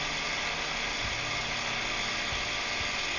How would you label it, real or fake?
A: real